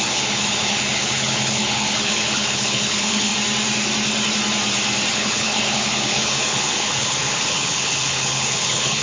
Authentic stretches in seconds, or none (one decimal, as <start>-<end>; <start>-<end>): 3.3-5.1